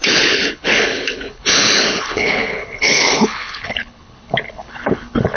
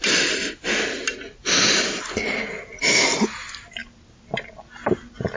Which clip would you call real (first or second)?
second